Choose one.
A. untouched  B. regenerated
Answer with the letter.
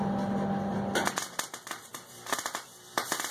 A